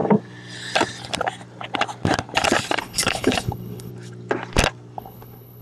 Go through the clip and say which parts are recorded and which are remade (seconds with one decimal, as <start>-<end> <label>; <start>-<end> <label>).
0.0-2.8 recorded; 2.8-3.9 remade; 3.9-5.0 recorded; 5.0-5.6 remade